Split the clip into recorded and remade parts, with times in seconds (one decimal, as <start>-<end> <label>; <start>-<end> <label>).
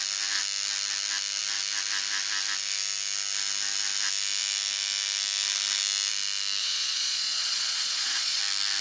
0.0-6.6 recorded; 6.6-8.4 remade; 8.4-8.8 recorded